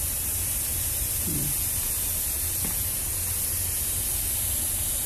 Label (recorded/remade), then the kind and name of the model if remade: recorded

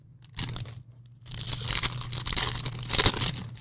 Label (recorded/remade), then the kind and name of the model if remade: recorded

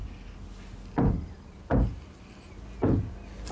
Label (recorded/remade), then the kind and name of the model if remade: recorded